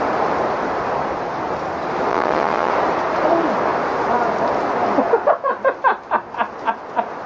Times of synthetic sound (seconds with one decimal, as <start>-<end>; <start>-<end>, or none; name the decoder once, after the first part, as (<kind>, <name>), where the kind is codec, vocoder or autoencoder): 2.1-2.7 (vocoder, Vocos)